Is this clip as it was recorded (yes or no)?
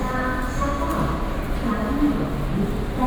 yes